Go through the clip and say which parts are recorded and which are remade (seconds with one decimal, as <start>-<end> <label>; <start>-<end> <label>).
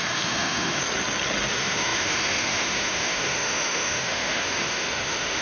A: 0.0-0.8 remade; 0.8-1.5 recorded; 1.5-5.4 remade